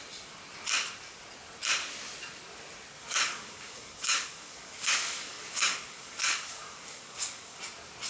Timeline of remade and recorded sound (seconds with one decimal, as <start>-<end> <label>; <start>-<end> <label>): 0.0-3.0 recorded; 3.0-7.6 remade; 7.6-8.1 recorded